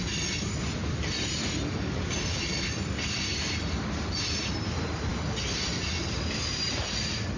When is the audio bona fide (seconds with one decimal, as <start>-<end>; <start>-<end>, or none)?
0.0-7.4